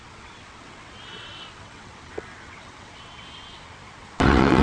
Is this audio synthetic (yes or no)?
yes